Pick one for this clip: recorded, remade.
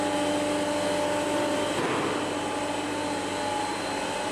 recorded